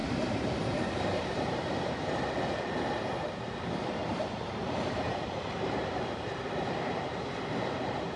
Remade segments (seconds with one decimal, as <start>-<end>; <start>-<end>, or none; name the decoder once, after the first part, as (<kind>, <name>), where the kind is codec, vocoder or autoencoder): 0.0-2.4 (vocoder, BigVGAN v2); 4.0-6.9